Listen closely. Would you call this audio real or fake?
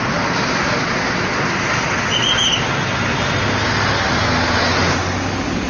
real